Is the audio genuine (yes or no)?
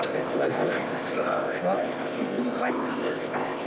no